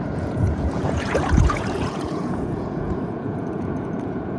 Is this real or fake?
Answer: fake